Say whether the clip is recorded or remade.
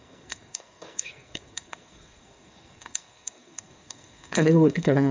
remade